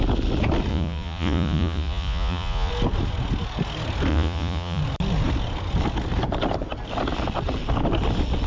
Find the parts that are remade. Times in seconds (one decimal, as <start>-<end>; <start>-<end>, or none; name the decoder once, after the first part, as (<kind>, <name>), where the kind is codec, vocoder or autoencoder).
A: 0.7-2.7 (vocoder, Vocos); 4.1-4.8